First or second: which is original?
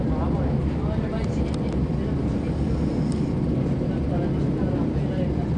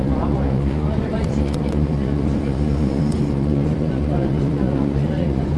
first